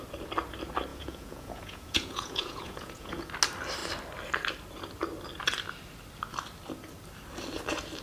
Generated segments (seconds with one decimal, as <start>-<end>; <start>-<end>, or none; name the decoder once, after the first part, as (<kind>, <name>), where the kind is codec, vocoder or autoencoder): 0.9-3.3 (vocoder, Vocos)